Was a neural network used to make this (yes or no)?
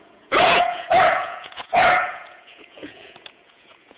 yes